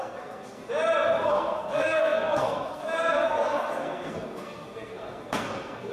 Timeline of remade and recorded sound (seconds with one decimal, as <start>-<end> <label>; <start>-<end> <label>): 0.0-0.6 remade; 0.6-1.3 recorded; 1.3-5.9 remade